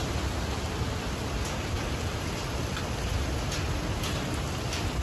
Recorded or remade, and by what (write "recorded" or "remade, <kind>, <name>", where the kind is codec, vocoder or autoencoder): recorded